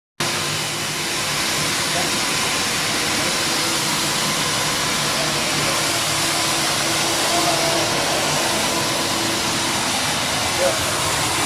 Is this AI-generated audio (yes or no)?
no